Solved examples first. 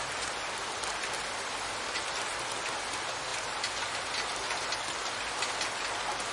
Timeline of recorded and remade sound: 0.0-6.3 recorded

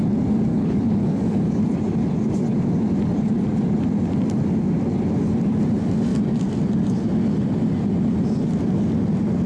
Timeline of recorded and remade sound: 0.0-0.5 recorded; 0.5-1.5 remade; 1.5-9.5 recorded

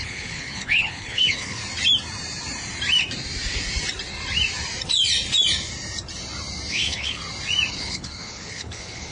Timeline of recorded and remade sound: 0.0-1.6 remade; 1.6-6.7 recorded; 6.7-7.2 remade; 7.2-7.7 recorded; 7.7-9.1 remade

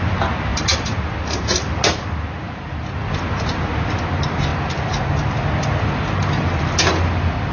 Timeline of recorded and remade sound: 0.0-7.5 recorded

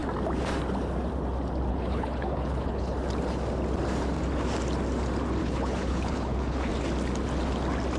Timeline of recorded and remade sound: 0.0-1.7 recorded; 1.7-3.0 remade; 3.0-5.4 recorded; 5.4-6.7 remade; 6.7-8.0 recorded